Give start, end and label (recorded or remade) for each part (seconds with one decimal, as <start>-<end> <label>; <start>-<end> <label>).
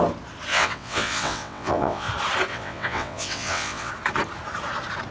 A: 0.0-0.5 recorded; 0.5-2.1 remade; 2.1-2.5 recorded; 2.5-3.9 remade; 3.9-5.1 recorded